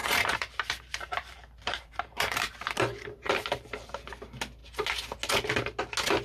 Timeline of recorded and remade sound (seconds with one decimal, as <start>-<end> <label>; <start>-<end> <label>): 0.0-3.7 remade; 3.7-6.2 recorded